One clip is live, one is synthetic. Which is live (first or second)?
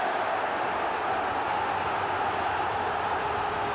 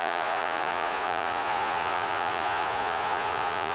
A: first